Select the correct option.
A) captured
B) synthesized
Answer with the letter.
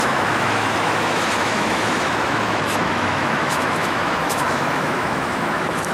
B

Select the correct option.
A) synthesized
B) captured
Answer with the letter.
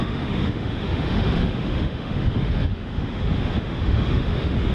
A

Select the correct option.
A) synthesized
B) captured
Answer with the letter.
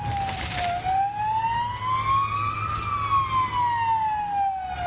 B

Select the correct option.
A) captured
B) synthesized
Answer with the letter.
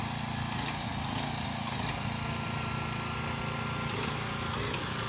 A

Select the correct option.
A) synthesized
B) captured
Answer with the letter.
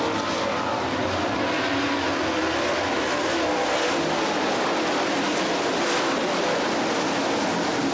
B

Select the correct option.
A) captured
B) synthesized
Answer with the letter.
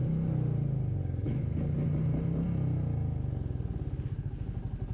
A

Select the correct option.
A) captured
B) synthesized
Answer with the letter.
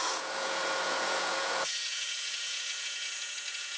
B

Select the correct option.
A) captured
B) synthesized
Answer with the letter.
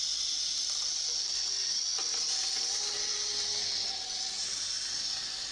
A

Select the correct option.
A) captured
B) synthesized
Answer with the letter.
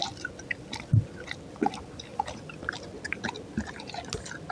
A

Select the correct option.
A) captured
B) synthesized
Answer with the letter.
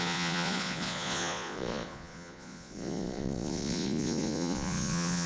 B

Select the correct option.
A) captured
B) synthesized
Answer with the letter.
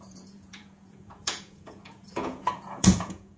B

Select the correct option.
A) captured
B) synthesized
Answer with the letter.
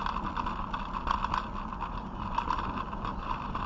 A